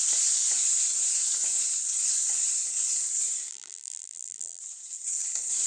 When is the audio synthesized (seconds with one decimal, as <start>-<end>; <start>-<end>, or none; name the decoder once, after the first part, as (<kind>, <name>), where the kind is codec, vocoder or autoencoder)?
3.5-4.6 (vocoder, BigVGAN v2)